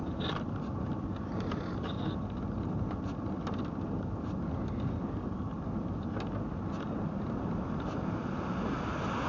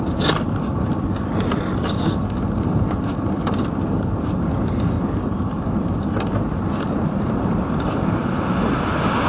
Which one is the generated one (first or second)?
second